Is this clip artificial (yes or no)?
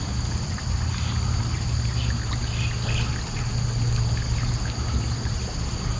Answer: no